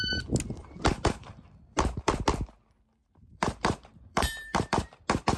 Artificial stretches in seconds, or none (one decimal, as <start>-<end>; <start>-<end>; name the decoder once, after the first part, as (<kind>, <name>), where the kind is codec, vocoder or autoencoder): 0.6-2.1 (vocoder, BigVGAN v2); 3.0-5.0